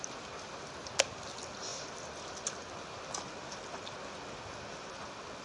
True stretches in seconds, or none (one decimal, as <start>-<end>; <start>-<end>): 0.0-5.4